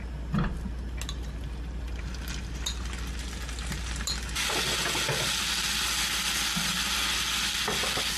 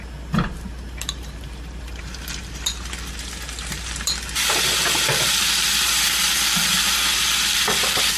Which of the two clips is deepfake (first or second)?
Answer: second